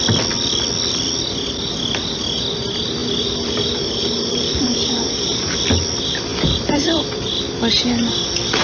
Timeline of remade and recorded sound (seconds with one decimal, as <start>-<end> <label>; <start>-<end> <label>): 0.0-3.0 recorded; 3.0-5.5 remade; 5.5-6.3 recorded; 6.3-7.5 remade; 7.5-8.6 recorded